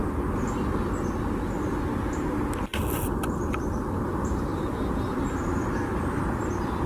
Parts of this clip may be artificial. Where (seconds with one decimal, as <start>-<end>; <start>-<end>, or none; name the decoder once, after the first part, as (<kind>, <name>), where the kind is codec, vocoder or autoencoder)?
none